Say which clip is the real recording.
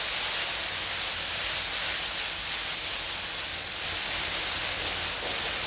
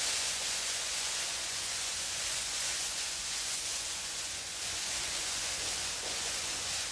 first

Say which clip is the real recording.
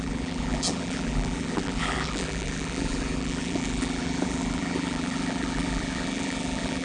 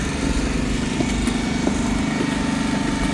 second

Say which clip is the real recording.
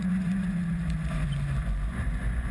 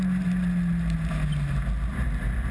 second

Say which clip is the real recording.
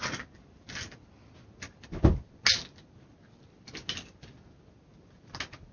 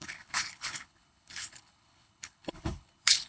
first